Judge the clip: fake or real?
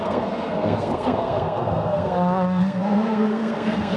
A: fake